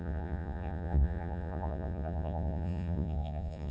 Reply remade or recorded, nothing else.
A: remade